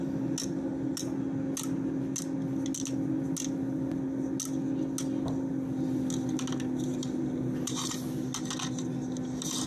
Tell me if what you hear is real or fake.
real